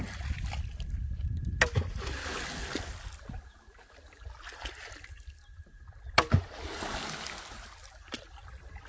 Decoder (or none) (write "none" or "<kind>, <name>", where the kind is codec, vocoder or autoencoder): none